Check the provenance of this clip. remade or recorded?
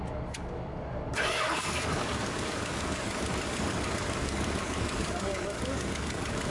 remade